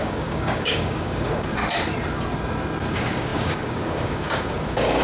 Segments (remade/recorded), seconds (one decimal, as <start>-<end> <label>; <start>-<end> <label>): 0.0-1.6 remade; 1.6-2.9 recorded; 2.9-5.0 remade